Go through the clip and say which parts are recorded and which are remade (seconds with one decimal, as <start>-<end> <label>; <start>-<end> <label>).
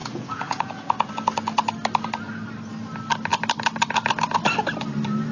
0.0-1.1 remade; 1.1-5.3 recorded